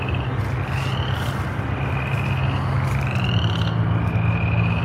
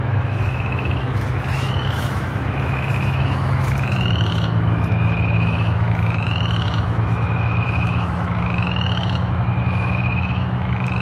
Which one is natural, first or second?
first